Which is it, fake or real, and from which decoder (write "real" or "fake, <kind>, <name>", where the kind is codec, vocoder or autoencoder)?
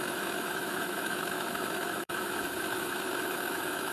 fake, autoencoder, DAC-VAE